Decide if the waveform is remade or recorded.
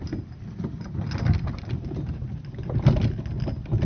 recorded